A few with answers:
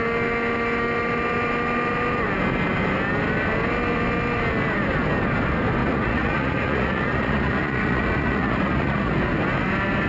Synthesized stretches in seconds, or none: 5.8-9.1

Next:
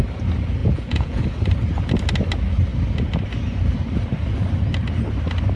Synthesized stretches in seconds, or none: 0.6-1.2

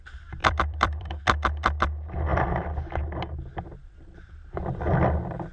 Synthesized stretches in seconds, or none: 0.4-1.2; 3.8-4.9

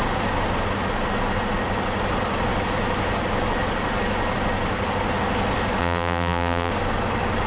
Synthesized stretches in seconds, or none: 5.8-6.7

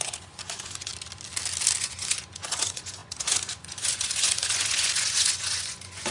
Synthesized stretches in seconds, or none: 0.0-0.9; 1.8-6.1

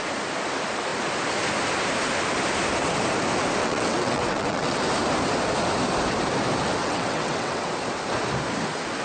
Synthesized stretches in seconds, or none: 3.6-4.8; 6.8-7.7